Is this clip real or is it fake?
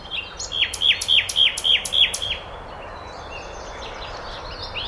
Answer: real